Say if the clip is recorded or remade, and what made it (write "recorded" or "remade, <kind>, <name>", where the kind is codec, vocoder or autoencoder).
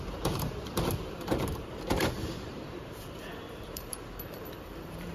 remade, vocoder, BigVGAN v2